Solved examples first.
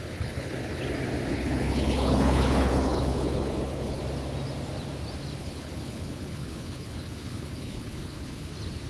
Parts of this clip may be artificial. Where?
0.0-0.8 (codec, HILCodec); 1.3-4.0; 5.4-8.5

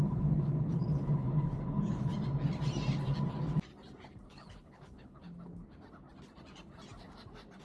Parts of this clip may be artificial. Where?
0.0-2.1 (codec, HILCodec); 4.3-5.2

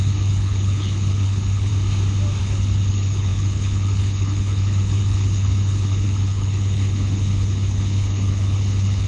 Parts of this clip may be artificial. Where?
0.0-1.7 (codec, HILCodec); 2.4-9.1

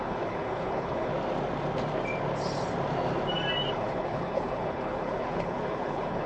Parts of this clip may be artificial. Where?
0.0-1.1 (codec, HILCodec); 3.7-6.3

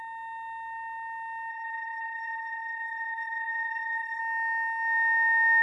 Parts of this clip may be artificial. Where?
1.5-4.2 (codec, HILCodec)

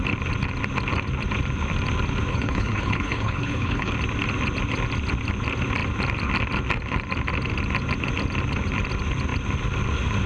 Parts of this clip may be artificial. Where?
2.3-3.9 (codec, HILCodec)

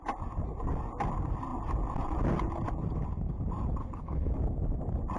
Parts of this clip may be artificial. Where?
3.8-4.3 (codec, HILCodec)